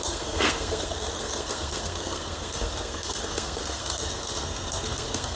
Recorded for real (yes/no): no